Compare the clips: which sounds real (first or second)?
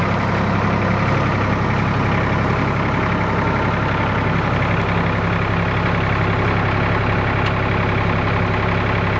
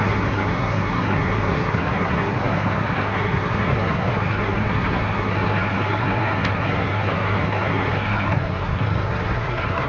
first